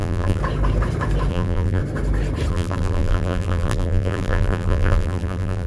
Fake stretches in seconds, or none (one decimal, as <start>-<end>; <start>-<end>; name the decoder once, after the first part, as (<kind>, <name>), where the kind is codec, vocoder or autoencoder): 0.0-0.4 (vocoder, BigVGAN v2); 1.3-1.8; 2.5-5.7